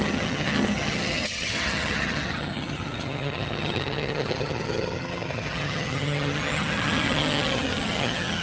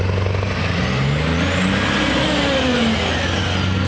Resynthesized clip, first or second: first